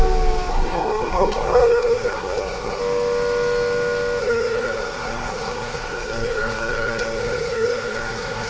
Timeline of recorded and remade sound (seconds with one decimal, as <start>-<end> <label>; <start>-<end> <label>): 0.0-0.5 recorded; 0.5-2.8 remade; 2.8-4.2 recorded; 4.2-8.5 remade